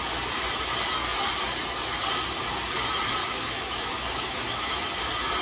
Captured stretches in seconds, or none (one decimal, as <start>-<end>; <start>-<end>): 0.0-3.2; 4.9-5.4